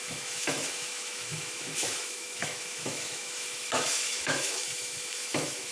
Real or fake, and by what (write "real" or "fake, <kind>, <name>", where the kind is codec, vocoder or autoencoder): fake, autoencoder, DAC-VAE